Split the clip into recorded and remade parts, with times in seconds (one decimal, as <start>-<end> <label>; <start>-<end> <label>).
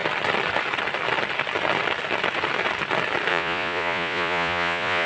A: 0.0-3.3 recorded; 3.3-5.1 remade